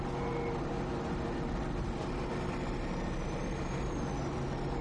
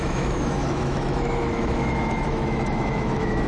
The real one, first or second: first